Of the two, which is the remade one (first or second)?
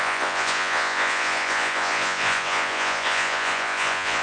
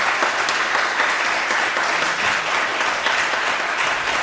first